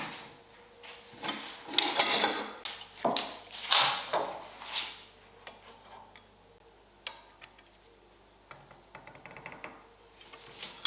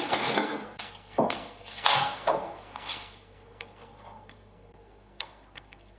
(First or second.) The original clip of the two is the first